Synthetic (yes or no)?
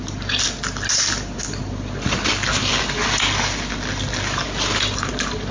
no